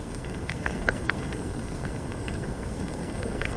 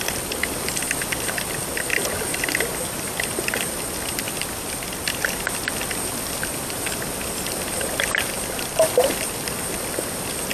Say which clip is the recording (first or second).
second